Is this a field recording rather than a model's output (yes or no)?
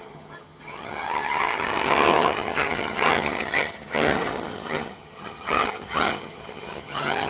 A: no